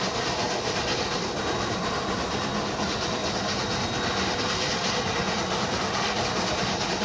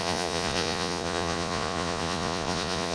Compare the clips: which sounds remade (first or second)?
second